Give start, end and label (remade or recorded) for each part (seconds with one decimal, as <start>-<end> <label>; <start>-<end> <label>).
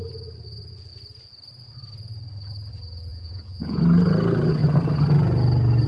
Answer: 0.0-3.1 recorded; 3.1-3.8 remade; 3.8-5.9 recorded